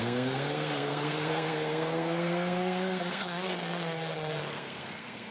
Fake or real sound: fake